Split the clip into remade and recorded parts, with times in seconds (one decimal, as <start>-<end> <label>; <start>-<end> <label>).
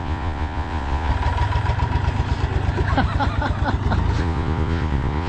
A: 0.0-1.1 remade; 1.1-4.2 recorded; 4.2-5.3 remade